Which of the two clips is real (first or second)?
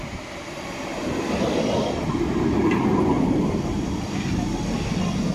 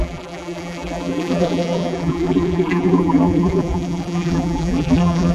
first